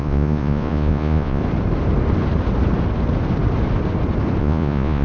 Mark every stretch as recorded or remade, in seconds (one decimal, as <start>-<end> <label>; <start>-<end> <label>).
0.0-1.4 remade; 1.4-4.4 recorded; 4.4-5.0 remade